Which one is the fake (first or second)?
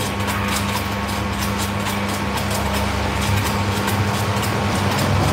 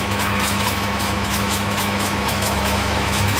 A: second